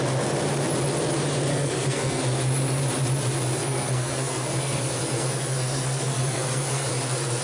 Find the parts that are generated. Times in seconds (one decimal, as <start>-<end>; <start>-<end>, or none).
1.5-2.2; 3.6-6.9